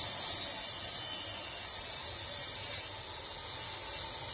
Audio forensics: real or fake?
real